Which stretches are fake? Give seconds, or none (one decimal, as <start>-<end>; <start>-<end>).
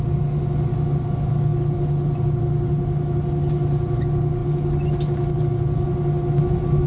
none